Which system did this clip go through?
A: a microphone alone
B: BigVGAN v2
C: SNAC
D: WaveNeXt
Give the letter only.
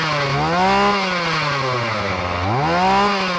A